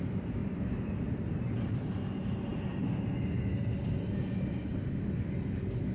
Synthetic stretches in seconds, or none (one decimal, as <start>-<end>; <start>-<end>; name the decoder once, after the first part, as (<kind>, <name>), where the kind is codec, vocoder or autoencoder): none